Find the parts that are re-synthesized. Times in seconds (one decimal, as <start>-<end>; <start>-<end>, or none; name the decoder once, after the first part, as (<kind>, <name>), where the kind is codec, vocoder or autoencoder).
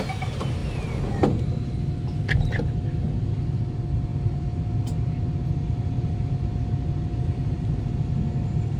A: none